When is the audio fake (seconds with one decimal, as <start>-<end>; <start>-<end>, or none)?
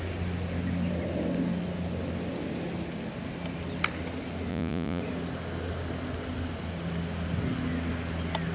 4.5-5.0